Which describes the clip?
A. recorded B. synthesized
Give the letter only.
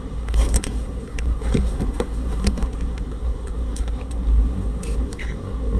B